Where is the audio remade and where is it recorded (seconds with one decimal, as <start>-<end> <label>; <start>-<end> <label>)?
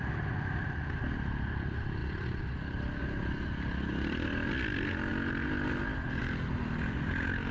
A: 0.0-7.5 recorded